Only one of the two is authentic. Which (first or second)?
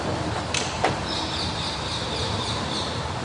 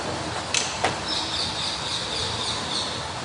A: second